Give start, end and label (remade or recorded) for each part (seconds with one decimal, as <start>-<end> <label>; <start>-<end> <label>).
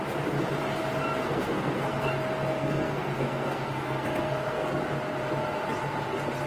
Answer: 0.0-1.2 recorded; 1.2-2.1 remade; 2.1-2.5 recorded; 2.5-4.8 remade; 4.8-6.5 recorded